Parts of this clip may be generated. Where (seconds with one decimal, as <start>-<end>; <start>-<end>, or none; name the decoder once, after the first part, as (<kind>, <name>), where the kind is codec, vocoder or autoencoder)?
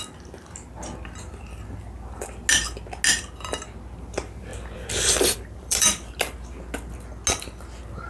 4.5-6.1 (vocoder, BigVGAN v2)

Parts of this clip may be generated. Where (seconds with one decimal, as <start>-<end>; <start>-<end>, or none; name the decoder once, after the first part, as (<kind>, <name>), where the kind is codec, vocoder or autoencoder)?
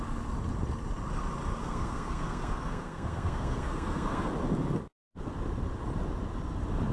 1.6-4.3 (codec, SNAC)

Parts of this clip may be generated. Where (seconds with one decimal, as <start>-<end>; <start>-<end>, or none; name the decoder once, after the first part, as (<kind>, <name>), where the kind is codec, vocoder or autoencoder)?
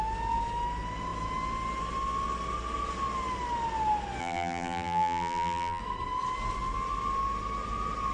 4.2-5.8 (vocoder, BigVGAN v2)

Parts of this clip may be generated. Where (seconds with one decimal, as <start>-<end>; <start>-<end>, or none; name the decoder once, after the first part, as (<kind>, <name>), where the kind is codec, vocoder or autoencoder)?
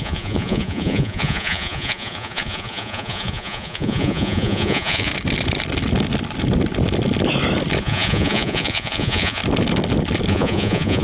0.0-5.1 (vocoder, Vocos); 7.8-9.4; 10.3-11.0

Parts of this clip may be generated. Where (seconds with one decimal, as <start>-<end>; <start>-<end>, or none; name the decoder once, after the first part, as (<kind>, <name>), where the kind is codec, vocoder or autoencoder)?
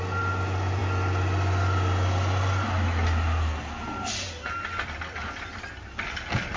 none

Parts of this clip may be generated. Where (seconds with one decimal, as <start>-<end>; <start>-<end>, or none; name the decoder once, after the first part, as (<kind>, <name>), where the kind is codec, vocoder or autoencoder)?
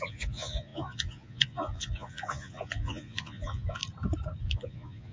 0.0-3.8 (vocoder, Vocos); 4.4-5.1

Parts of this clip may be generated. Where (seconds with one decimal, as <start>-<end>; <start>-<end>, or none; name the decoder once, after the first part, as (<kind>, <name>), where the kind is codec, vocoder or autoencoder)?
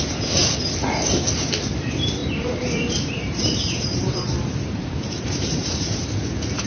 2.2-6.0 (vocoder, BigVGAN v2)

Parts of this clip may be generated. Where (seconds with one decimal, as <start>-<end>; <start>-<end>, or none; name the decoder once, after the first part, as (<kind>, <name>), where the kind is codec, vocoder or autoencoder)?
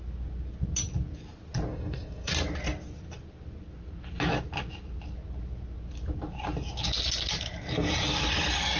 1.7-2.3 (codec, SNAC)